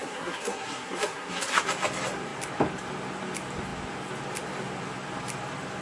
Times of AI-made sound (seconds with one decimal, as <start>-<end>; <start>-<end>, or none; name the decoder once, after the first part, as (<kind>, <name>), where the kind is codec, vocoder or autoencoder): 0.0-1.6 (codec, SNAC)

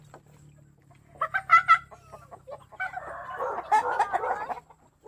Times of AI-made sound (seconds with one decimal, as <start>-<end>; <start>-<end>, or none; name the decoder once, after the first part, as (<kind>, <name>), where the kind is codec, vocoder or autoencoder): none

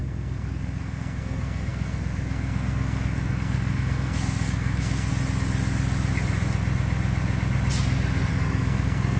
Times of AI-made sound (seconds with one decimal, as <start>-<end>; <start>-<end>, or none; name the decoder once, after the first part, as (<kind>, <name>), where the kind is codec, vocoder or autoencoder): 0.0-5.1 (codec, SNAC); 8.3-9.2

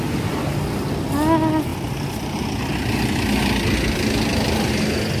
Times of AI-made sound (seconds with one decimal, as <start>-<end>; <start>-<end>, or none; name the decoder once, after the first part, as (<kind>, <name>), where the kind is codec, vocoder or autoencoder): none

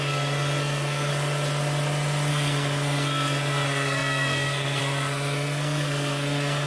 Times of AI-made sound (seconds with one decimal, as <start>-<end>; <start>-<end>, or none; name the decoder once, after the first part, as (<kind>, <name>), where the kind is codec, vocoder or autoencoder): 0.0-1.1 (codec, SNAC); 2.3-6.7